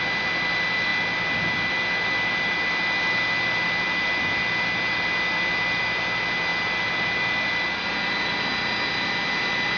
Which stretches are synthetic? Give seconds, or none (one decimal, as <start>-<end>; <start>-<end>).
none